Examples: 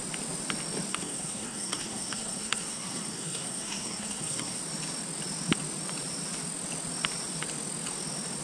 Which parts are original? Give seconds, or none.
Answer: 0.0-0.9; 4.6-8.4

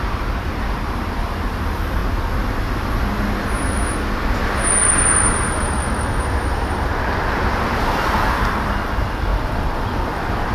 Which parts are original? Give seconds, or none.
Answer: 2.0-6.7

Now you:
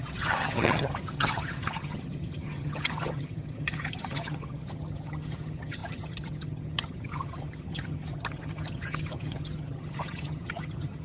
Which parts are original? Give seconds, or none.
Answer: none